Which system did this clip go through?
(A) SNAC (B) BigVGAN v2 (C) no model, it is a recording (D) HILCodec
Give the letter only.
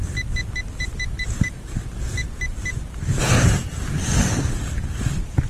C